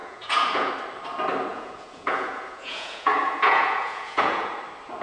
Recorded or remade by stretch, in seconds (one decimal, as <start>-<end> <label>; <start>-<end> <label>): 0.0-0.7 remade; 0.7-1.5 recorded; 1.5-4.5 remade; 4.5-5.0 recorded